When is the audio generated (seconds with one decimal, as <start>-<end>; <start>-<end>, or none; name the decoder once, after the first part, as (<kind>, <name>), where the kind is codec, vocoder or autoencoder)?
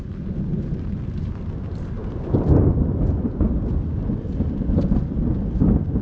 none